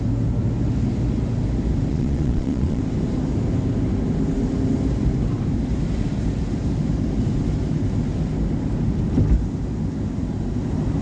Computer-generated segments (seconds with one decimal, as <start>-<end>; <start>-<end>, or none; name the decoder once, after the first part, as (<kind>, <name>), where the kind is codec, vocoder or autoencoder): 1.9-2.8 (vocoder, Vocos)